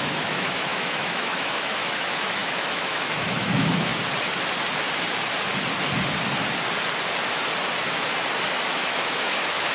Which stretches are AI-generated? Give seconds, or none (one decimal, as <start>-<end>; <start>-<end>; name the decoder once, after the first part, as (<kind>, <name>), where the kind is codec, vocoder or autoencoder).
0.0-3.9 (autoencoder, DAC-VAE); 8.5-9.7